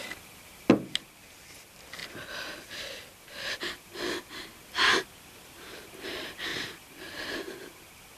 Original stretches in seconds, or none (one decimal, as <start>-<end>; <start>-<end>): 0.0-8.2